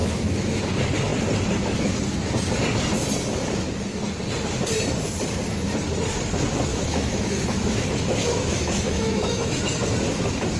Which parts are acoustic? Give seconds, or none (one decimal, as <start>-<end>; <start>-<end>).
0.6-6.7; 9.6-10.6